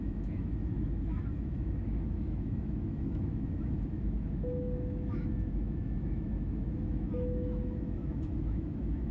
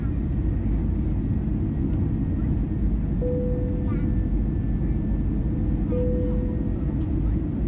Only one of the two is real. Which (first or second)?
second